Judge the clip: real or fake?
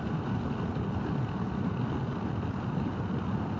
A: real